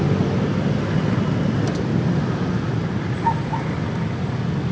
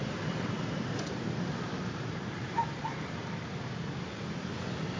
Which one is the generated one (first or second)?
second